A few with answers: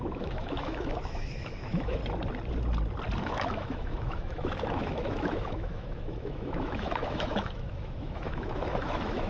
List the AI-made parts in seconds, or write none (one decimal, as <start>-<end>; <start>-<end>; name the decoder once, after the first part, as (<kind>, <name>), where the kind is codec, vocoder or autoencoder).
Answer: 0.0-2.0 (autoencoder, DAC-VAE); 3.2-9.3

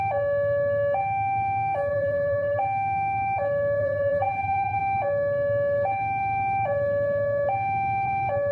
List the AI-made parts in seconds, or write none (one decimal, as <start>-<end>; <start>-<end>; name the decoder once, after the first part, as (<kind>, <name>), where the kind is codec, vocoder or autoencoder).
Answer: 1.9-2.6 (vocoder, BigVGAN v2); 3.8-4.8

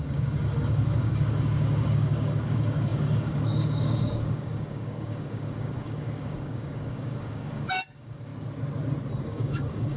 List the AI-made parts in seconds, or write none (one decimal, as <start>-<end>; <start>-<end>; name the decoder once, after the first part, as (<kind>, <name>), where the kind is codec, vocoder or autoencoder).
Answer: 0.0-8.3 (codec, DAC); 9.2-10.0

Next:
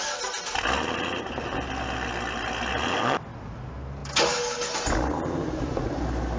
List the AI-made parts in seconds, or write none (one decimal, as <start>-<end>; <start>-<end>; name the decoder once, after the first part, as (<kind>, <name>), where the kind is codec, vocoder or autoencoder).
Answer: none

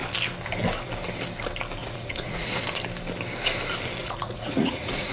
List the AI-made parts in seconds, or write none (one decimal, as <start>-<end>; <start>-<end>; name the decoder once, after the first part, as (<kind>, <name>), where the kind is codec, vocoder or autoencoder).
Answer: 1.8-2.6 (vocoder, Vocos); 4.0-5.1

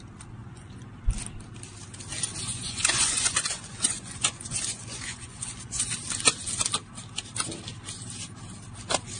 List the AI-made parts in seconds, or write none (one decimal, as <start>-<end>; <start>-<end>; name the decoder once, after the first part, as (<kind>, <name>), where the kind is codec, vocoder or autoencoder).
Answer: 0.4-0.9 (vocoder, Vocos); 2.5-5.9

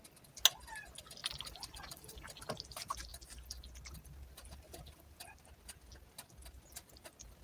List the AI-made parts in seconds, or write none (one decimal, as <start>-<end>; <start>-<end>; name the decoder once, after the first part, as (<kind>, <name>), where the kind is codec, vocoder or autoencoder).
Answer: 1.2-2.5 (vocoder, BigVGAN v2); 3.1-5.2